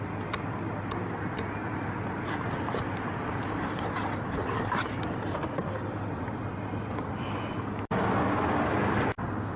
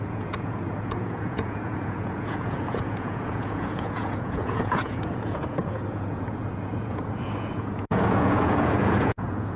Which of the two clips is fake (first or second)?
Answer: second